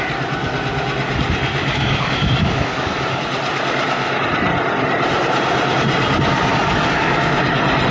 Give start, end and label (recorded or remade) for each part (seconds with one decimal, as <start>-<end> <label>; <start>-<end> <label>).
0.0-1.6 recorded; 1.6-3.2 remade; 3.2-6.5 recorded; 6.5-7.2 remade; 7.2-7.9 recorded